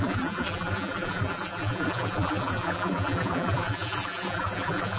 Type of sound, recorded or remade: remade